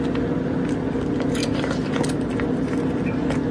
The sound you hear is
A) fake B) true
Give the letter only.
B